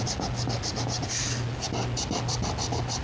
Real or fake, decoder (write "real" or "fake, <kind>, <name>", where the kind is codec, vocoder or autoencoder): real